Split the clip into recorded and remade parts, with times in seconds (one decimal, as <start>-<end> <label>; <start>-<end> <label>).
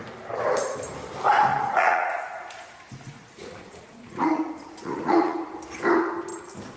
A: 0.0-1.5 recorded; 1.5-5.6 remade; 5.6-6.8 recorded